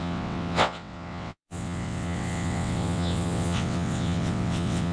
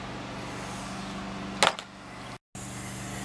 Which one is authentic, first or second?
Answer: second